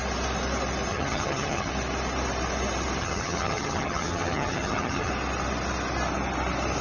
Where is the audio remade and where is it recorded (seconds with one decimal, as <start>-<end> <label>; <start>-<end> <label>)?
0.0-0.9 recorded; 0.9-1.7 remade; 1.7-3.0 recorded; 3.0-5.1 remade; 5.1-6.8 recorded